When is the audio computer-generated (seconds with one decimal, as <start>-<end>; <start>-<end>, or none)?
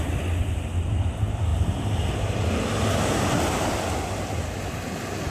none